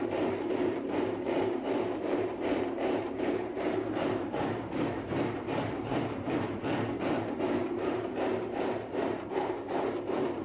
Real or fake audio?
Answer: fake